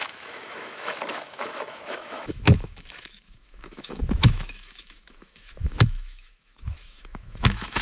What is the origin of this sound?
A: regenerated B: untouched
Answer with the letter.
A